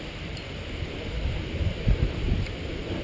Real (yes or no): yes